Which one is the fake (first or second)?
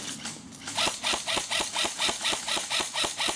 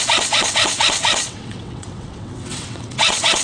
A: second